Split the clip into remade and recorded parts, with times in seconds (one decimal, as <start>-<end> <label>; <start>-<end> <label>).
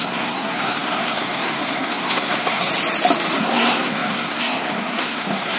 0.0-2.7 remade; 2.7-3.4 recorded; 3.4-5.6 remade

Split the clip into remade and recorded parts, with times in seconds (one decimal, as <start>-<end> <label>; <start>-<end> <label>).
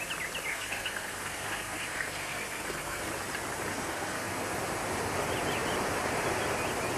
0.0-0.5 recorded; 0.5-3.1 remade; 3.1-3.7 recorded; 3.7-4.5 remade; 4.5-7.0 recorded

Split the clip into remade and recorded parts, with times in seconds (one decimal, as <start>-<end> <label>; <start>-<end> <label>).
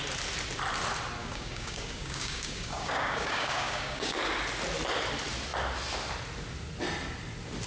0.0-1.2 recorded; 1.2-4.2 remade; 4.2-7.7 recorded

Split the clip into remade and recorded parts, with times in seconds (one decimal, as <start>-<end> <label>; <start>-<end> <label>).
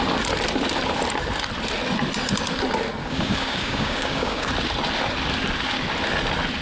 0.0-3.0 recorded; 3.0-4.5 remade; 4.5-6.6 recorded